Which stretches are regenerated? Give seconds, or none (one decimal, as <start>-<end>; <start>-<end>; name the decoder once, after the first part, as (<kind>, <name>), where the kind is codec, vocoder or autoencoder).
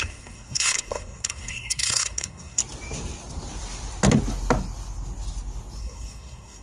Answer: 0.0-2.6 (codec, SNAC); 5.8-6.6